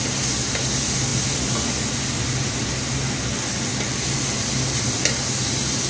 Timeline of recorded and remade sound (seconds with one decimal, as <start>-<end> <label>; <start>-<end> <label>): 0.0-5.9 recorded